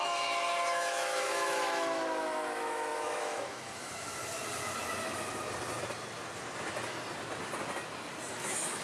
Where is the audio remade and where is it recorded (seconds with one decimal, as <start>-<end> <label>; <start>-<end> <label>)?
0.0-4.2 remade; 4.2-8.3 recorded; 8.3-8.8 remade